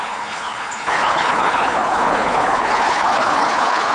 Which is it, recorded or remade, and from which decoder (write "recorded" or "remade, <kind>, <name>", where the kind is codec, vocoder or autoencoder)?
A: remade, codec, HILCodec